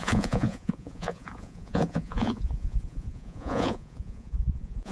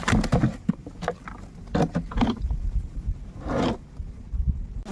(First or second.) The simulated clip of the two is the first